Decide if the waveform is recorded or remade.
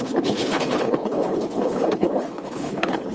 remade